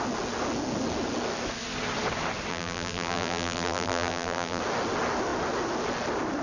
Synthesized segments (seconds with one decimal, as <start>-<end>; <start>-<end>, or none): 2.5-4.6